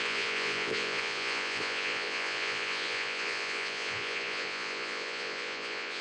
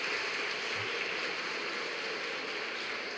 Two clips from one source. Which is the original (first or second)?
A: second